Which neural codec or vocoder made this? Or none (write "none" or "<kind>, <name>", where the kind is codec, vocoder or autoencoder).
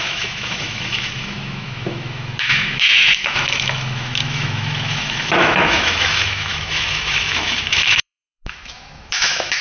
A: autoencoder, DAC-VAE